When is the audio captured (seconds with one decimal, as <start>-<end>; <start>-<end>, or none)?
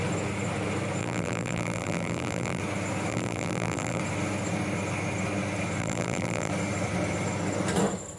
0.0-1.0; 2.6-3.1; 4.0-5.8; 6.5-8.2